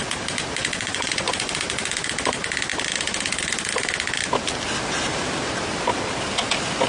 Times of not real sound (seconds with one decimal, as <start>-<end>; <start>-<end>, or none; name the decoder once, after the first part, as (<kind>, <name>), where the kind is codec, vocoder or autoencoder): 0.6-1.5 (vocoder, Vocos)